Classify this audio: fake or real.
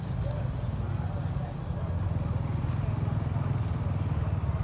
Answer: real